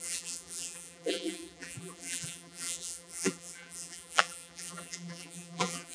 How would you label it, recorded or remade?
remade